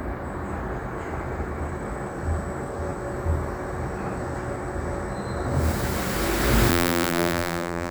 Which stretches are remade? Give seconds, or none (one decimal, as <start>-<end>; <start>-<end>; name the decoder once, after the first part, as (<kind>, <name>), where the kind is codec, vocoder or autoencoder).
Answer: 6.7-7.9 (vocoder, BigVGAN v2)